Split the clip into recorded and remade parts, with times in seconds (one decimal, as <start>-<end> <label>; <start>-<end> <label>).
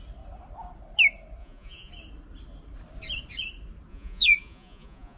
0.0-1.4 recorded; 1.4-1.9 remade; 1.9-3.9 recorded; 3.9-5.2 remade